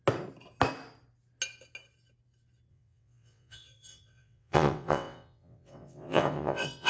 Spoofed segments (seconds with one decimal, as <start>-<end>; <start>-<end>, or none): 2.7-6.9